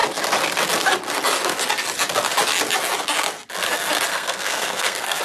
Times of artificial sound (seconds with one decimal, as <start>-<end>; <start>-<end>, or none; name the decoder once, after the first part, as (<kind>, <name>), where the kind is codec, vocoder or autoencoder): 4.1-5.2 (codec, SNAC)